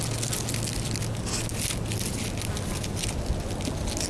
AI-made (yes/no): no